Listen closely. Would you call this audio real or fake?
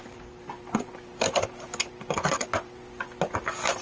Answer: real